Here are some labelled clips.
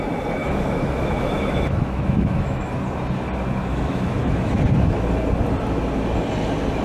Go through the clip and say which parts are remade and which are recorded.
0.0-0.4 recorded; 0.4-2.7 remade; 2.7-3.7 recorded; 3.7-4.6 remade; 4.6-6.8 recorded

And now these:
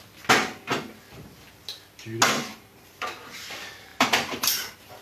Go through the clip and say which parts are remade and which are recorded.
0.0-2.5 recorded; 2.5-3.5 remade; 3.5-3.9 recorded; 3.9-5.0 remade

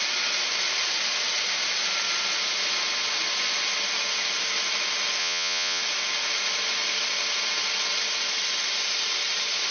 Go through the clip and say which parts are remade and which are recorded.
0.0-5.2 recorded; 5.2-5.8 remade; 5.8-9.7 recorded

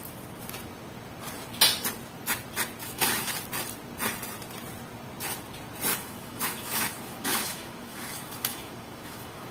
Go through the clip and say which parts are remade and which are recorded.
0.0-2.8 recorded; 2.8-3.3 remade; 3.3-5.9 recorded; 5.9-9.5 remade

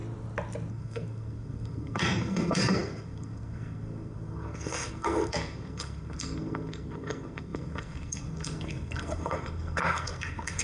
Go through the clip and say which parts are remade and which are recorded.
0.0-0.7 recorded; 0.7-10.6 remade

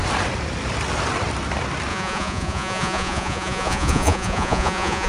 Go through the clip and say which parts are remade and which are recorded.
0.0-1.9 recorded; 1.9-5.1 remade

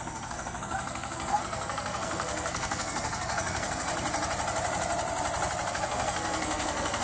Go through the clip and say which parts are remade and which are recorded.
0.0-3.9 remade; 3.9-5.7 recorded; 5.7-7.0 remade